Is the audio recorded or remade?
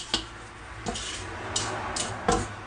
recorded